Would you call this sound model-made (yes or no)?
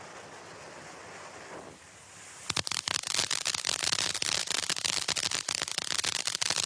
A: no